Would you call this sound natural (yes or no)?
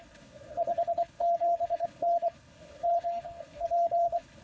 no